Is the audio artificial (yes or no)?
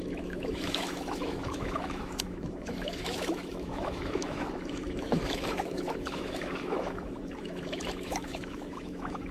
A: yes